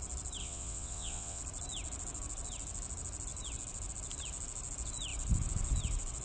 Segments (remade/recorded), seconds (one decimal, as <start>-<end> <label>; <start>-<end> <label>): 0.0-0.4 recorded; 0.4-1.4 remade; 1.4-6.2 recorded